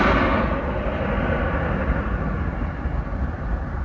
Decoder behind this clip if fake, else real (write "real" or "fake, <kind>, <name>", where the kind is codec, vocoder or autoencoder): real